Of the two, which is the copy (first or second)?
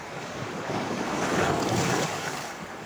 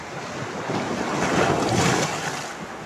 first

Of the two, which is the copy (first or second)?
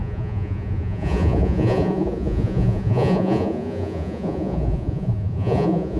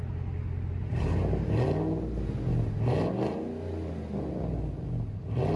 first